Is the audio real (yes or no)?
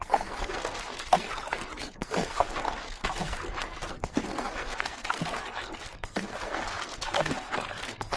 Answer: no